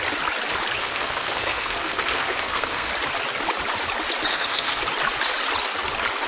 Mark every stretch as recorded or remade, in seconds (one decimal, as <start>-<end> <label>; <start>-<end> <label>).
0.0-0.8 recorded; 0.8-2.9 remade; 2.9-4.3 recorded; 4.3-4.8 remade; 4.8-6.3 recorded